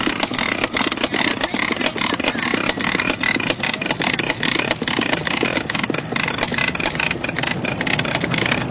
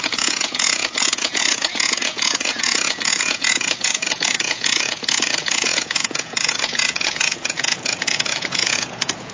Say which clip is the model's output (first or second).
second